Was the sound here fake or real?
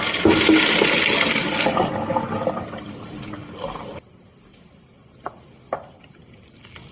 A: real